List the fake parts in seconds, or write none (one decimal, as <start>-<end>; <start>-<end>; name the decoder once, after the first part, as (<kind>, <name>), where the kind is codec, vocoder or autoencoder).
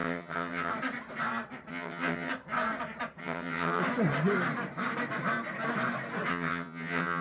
0.0-0.7 (vocoder, HiFi-GAN); 1.7-2.3; 3.2-3.8; 6.3-7.2